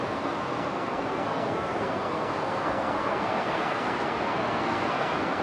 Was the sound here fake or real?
fake